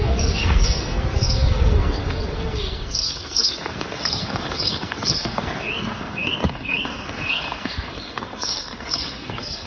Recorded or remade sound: remade